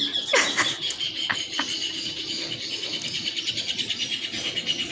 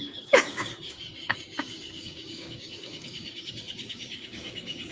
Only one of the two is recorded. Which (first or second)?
first